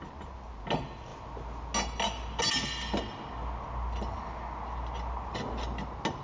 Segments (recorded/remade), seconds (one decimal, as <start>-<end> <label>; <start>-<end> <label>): 0.0-6.2 recorded